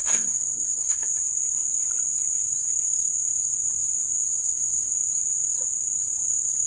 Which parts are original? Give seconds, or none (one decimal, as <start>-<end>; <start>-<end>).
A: 1.0-4.3; 4.9-6.7